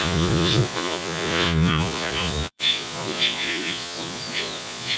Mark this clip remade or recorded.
remade